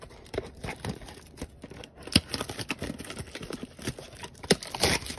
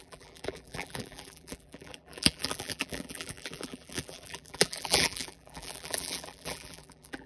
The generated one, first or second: second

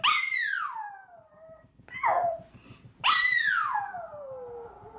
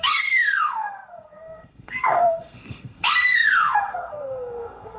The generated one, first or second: second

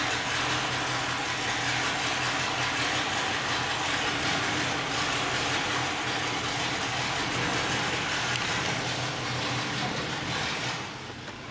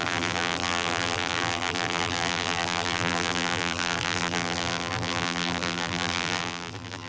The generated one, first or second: second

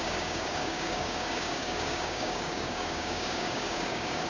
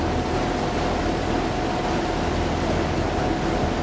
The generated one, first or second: first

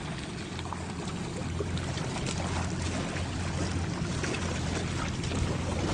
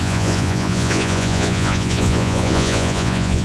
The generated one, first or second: second